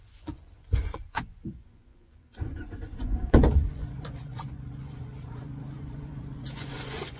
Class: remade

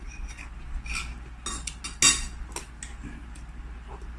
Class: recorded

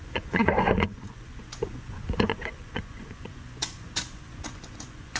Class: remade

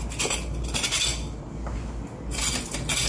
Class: recorded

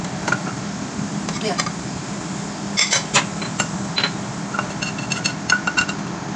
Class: recorded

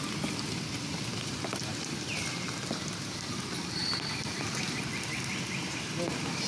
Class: recorded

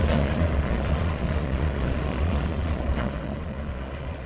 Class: remade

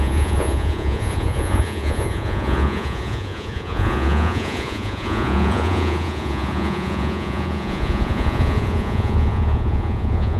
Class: remade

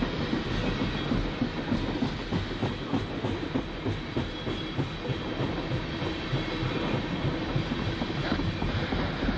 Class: recorded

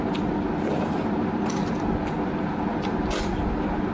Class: recorded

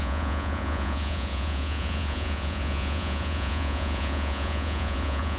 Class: remade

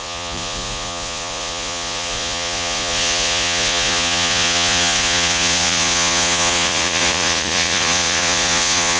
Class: remade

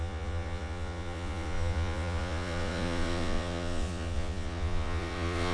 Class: remade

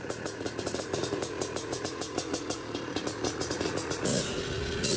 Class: remade